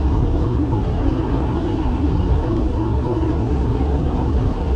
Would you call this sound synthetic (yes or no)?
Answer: yes